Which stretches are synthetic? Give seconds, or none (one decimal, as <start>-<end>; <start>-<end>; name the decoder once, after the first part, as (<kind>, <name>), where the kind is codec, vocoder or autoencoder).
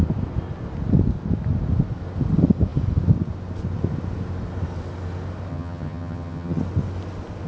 5.5-6.6 (vocoder, HiFi-GAN)